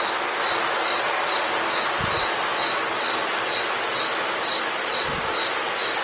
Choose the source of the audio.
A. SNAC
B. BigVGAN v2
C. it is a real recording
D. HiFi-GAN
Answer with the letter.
C